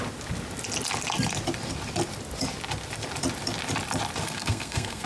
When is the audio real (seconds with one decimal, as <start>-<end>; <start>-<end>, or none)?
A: 0.0-4.2